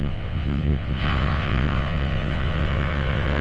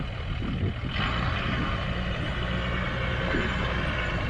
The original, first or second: second